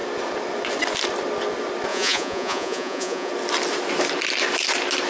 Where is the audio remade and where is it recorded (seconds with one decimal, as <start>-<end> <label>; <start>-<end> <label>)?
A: 0.0-1.9 recorded; 1.9-3.3 remade; 3.3-5.1 recorded